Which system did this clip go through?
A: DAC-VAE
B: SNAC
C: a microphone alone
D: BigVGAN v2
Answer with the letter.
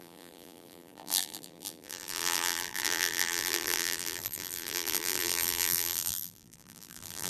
D